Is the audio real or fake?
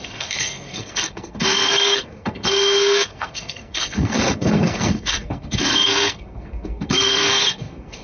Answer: fake